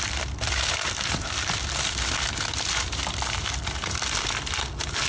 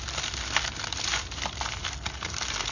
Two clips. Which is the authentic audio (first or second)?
second